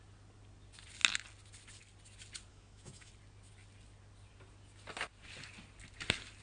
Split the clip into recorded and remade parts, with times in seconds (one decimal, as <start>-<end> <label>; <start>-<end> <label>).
0.0-2.5 recorded; 2.5-3.1 remade; 3.1-6.4 recorded